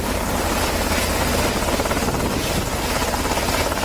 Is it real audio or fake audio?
real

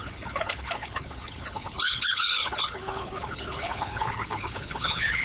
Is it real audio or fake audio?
fake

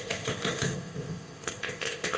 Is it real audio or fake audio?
fake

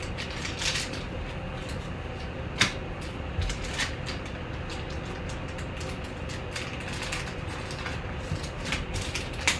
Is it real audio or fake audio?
real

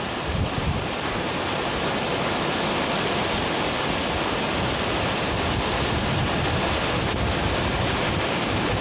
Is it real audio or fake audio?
real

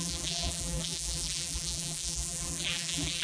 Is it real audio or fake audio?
fake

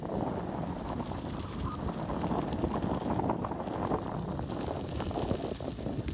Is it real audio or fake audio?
real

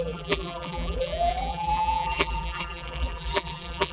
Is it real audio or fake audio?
fake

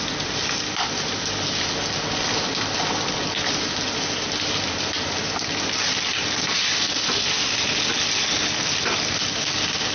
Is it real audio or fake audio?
real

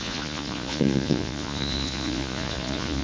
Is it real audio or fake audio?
fake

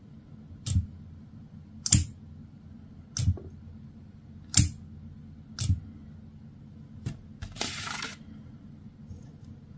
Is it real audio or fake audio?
real